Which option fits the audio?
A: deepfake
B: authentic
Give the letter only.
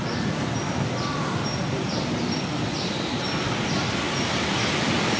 B